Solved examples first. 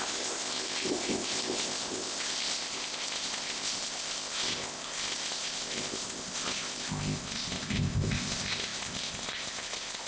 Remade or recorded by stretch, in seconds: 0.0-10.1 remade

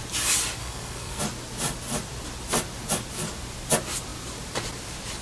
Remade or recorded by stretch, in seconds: 0.0-0.6 recorded; 0.6-1.2 remade; 1.2-5.2 recorded

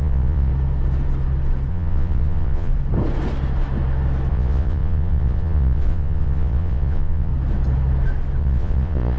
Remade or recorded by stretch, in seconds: 0.0-0.5 remade; 0.5-1.7 recorded; 1.7-2.7 remade; 2.7-4.3 recorded; 4.3-7.3 remade; 7.3-8.4 recorded; 8.4-9.2 remade